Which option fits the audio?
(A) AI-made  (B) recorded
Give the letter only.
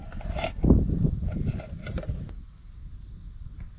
B